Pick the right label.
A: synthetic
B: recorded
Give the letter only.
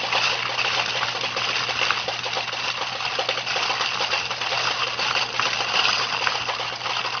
B